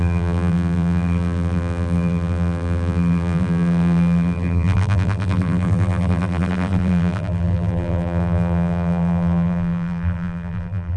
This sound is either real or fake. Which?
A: fake